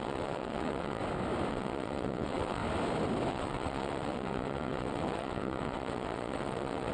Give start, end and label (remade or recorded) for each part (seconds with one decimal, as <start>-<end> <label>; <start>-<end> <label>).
0.0-1.0 remade; 1.0-1.5 recorded; 1.5-2.6 remade; 2.6-3.3 recorded; 3.3-6.9 remade